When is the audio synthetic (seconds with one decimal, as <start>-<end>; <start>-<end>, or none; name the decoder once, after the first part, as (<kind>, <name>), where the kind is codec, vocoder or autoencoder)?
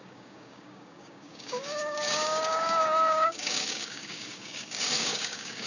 0.0-5.7 (codec, DAC)